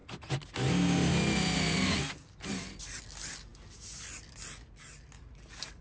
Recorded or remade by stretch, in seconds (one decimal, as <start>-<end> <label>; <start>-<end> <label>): 0.0-5.8 recorded